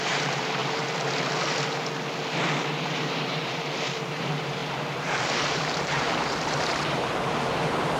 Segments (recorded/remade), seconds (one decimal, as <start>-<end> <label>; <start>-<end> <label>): 0.0-0.6 remade; 0.6-2.6 recorded; 2.6-8.0 remade